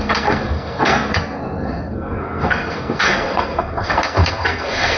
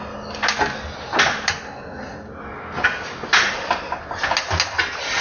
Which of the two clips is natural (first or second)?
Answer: second